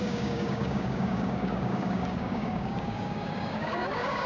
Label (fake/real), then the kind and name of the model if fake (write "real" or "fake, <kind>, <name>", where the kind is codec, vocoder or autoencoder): fake, codec, DAC